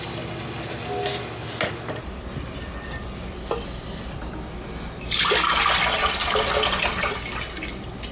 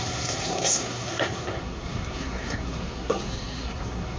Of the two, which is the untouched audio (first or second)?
first